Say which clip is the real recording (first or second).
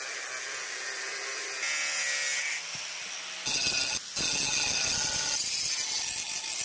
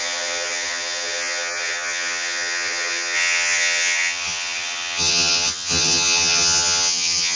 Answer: first